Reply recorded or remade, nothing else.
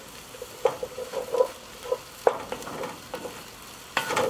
recorded